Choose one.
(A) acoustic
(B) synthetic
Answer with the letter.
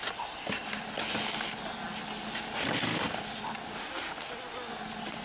A